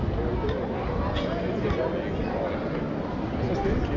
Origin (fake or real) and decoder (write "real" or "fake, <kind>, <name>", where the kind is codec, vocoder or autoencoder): real